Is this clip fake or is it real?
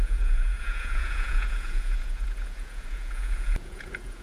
fake